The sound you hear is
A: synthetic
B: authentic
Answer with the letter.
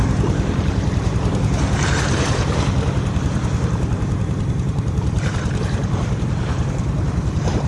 A